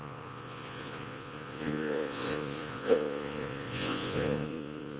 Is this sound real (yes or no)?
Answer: no